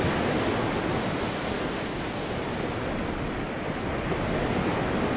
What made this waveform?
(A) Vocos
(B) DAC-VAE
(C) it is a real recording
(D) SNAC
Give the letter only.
C